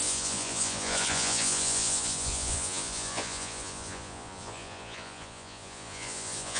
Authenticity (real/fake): fake